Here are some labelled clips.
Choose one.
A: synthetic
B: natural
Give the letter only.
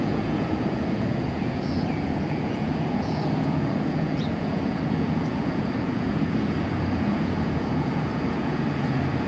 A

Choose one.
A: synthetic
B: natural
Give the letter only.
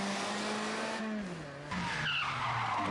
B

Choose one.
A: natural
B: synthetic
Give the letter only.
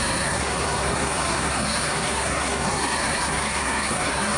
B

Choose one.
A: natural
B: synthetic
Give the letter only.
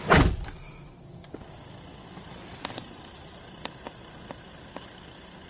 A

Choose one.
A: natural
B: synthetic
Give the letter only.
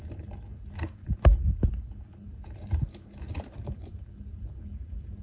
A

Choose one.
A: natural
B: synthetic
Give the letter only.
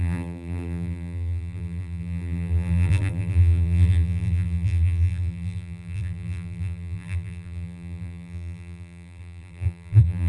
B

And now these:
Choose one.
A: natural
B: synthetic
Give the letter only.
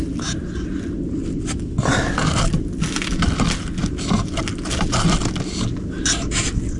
A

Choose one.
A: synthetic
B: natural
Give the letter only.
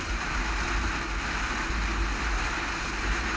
B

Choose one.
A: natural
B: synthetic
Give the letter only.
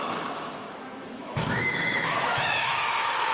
B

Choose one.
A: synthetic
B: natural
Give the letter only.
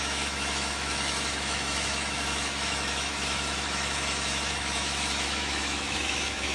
A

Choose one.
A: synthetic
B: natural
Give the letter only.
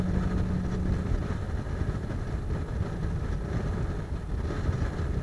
B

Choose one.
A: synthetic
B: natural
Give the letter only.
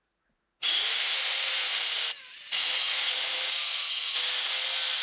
B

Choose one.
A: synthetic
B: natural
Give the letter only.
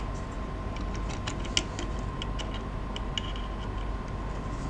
B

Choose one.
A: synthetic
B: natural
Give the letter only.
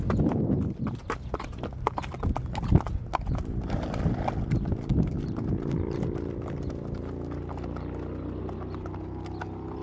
B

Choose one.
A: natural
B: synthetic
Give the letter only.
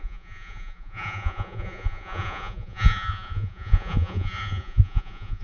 B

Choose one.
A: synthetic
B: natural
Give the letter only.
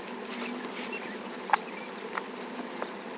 B